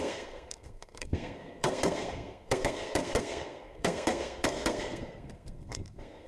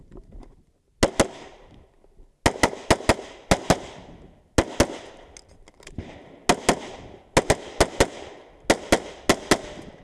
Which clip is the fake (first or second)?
first